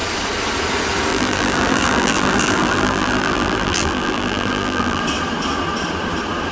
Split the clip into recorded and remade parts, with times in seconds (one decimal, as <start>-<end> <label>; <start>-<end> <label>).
0.0-1.1 recorded; 1.1-5.0 remade; 5.0-6.5 recorded